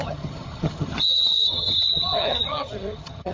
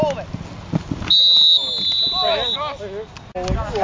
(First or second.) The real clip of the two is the second